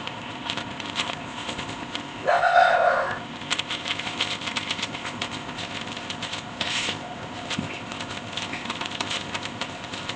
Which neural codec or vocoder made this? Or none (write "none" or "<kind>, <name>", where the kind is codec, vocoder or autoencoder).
codec, ZipCodec